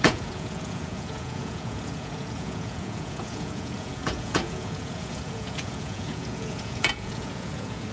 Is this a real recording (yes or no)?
no